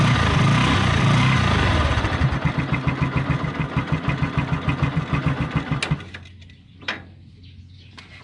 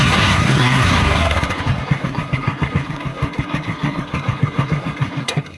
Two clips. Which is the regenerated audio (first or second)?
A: second